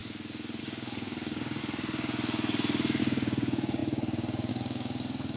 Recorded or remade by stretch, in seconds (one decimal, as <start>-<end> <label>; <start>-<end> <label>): 0.0-0.6 recorded; 0.6-1.6 remade; 1.6-3.0 recorded; 3.0-5.4 remade